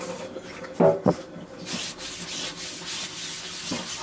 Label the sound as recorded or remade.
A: recorded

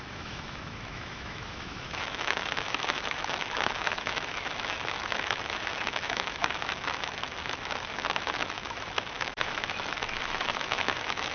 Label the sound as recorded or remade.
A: remade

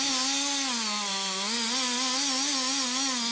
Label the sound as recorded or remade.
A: recorded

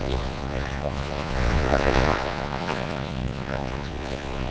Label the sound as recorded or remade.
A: remade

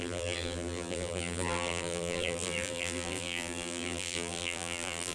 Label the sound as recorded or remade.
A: remade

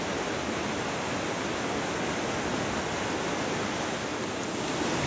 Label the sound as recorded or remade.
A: recorded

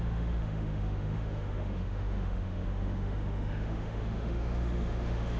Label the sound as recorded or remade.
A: remade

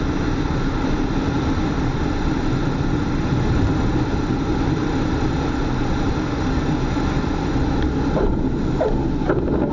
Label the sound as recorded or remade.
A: recorded